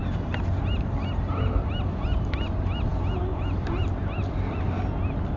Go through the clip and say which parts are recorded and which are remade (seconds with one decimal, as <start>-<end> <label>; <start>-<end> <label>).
0.0-5.4 recorded